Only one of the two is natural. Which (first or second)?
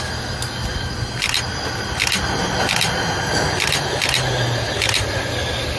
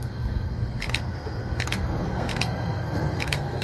first